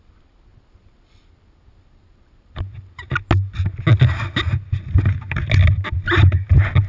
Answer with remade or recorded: recorded